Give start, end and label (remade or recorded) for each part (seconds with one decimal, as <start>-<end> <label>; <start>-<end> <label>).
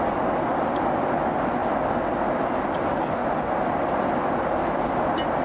0.0-5.4 recorded